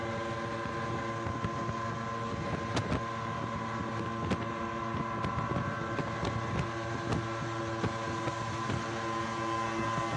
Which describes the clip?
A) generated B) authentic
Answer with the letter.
B